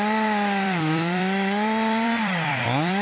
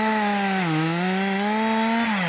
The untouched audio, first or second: second